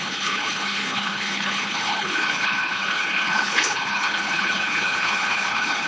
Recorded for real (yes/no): no